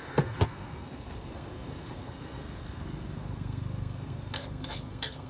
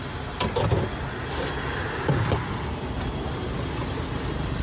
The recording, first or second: second